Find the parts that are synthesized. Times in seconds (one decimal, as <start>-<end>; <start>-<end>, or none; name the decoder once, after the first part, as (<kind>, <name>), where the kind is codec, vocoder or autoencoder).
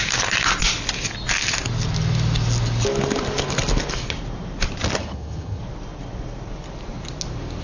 5.0-5.6 (vocoder, HiFi-GAN)